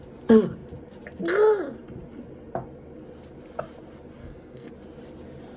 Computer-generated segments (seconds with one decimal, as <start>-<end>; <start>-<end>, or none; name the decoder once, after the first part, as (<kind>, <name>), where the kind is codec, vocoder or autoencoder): 4.2-4.7 (codec, SNAC)